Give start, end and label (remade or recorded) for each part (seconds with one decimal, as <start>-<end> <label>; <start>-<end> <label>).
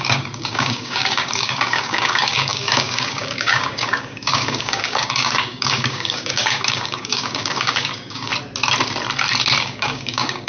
0.0-8.3 remade; 8.3-9.6 recorded; 9.6-10.5 remade